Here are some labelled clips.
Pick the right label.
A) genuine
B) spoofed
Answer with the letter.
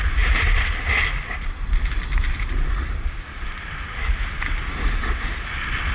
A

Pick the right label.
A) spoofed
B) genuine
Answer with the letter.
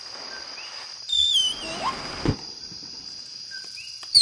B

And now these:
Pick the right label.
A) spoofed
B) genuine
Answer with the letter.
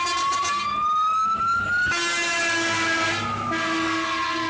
B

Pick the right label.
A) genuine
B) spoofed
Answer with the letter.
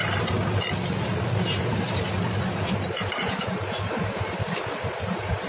A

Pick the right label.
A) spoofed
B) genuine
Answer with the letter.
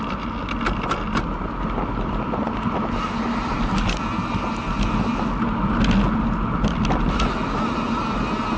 B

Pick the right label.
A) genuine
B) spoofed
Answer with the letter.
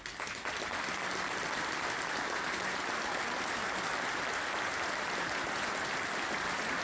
A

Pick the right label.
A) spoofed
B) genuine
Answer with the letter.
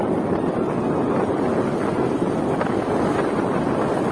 B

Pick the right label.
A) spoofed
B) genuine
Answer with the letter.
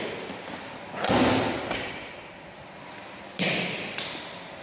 B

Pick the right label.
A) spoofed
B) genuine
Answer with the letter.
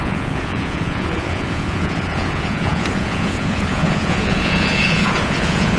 A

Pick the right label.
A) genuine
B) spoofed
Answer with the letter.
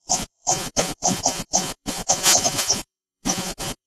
B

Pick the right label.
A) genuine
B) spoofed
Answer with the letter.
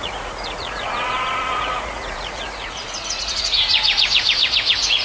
B